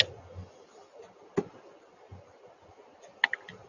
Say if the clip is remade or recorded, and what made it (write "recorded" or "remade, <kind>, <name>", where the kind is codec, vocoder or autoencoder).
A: recorded